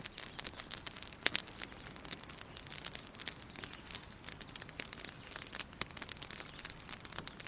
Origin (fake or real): real